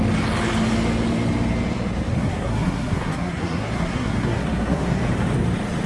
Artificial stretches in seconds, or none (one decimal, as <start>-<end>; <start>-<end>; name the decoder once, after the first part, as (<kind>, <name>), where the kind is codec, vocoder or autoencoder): 2.1-5.0 (codec, SNAC)